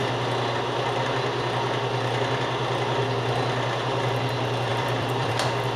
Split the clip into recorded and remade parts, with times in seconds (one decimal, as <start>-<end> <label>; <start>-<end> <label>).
0.0-4.7 recorded; 4.7-5.3 remade; 5.3-5.8 recorded